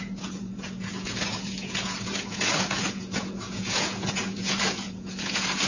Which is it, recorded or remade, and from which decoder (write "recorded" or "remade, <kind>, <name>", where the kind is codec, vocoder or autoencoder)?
remade, vocoder, Vocos